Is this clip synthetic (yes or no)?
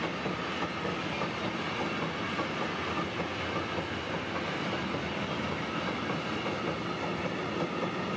no